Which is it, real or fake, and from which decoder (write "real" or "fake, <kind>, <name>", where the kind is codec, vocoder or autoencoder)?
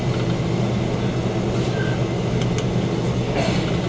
real